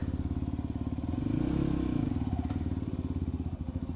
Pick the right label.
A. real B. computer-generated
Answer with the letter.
A